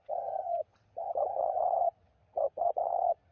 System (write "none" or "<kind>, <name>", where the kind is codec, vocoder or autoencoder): vocoder, HiFi-GAN